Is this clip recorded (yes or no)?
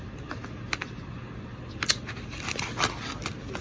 yes